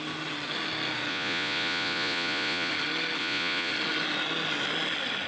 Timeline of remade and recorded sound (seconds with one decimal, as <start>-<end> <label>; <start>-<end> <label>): 0.0-1.1 recorded; 1.1-2.7 remade; 2.7-3.2 recorded; 3.2-3.7 remade; 3.7-5.3 recorded